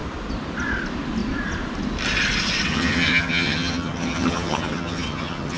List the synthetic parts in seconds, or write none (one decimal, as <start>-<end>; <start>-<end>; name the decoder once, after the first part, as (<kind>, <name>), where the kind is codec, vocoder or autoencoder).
2.7-5.6 (vocoder, HiFi-GAN)